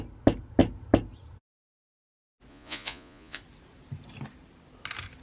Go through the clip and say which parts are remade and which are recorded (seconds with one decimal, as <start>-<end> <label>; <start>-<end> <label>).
0.0-2.5 recorded; 2.5-3.4 remade; 3.4-5.2 recorded